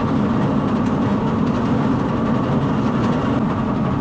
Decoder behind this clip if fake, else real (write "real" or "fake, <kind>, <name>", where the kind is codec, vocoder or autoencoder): real